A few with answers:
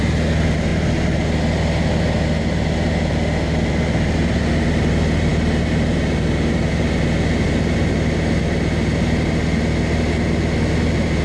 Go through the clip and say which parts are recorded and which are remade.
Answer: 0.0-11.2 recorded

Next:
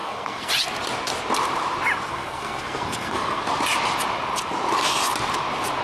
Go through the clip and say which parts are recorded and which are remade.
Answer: 0.0-0.5 remade; 0.5-2.1 recorded; 2.1-3.4 remade; 3.4-5.8 recorded

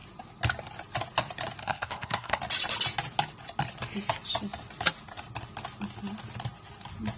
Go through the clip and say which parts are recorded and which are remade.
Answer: 0.0-1.6 recorded; 1.6-2.4 remade; 2.4-7.2 recorded

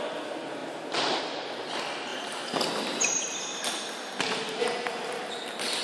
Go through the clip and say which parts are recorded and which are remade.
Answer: 0.0-5.8 recorded

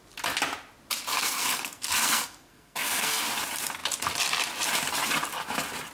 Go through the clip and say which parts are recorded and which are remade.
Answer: 0.0-1.1 recorded; 1.1-3.2 remade; 3.2-5.9 recorded

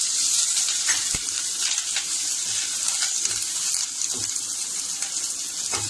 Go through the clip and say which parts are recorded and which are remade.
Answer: 0.0-5.9 recorded